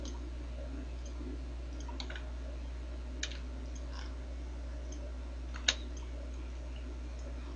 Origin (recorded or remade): recorded